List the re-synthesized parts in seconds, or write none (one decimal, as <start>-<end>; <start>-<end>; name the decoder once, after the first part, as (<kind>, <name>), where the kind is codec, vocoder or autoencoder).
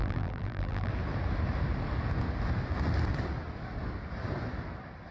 0.0-0.9 (vocoder, BigVGAN v2)